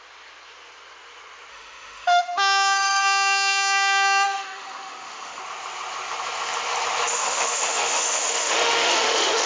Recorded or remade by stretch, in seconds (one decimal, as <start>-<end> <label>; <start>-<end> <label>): 0.0-1.5 recorded; 1.5-5.4 remade; 5.4-7.1 recorded; 7.1-9.5 remade